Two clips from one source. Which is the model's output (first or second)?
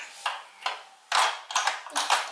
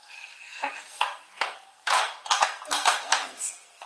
second